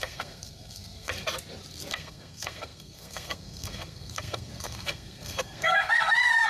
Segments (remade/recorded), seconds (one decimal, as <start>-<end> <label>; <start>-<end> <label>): 0.0-1.1 remade; 1.1-1.9 recorded; 1.9-6.5 remade